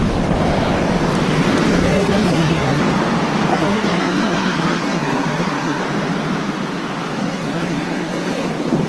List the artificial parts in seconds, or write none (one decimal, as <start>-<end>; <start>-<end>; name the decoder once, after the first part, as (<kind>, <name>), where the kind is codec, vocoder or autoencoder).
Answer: 1.8-2.8 (codec, SNAC); 3.5-5.8; 7.2-8.5